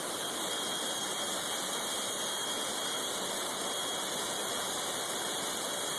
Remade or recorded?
recorded